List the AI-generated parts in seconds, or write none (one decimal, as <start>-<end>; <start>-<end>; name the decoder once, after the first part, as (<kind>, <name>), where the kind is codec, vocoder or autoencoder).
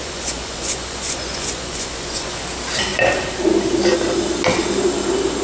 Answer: 0.0-2.4 (vocoder, Vocos)